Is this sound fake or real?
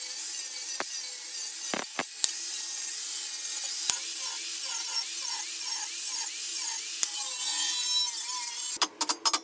real